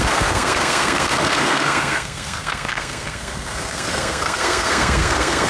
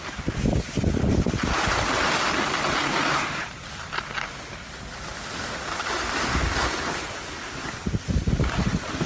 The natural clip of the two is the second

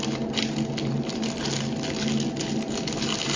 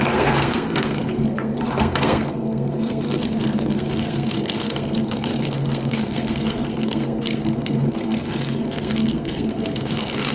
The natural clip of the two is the first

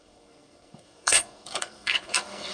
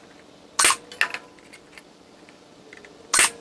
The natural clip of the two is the second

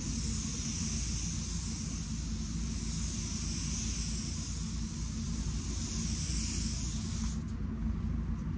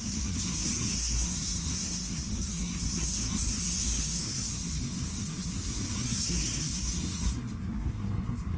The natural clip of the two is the first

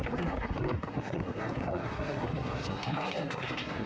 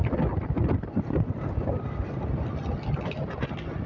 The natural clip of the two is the second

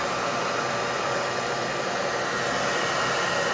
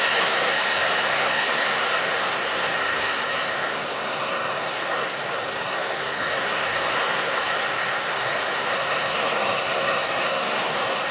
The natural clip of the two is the first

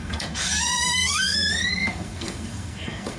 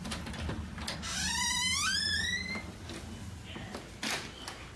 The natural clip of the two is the second